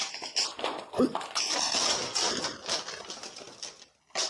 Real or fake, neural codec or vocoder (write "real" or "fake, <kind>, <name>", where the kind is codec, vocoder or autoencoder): real